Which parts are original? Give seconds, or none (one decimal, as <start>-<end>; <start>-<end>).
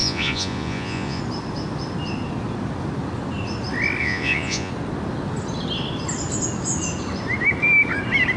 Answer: 1.2-4.0; 4.7-8.4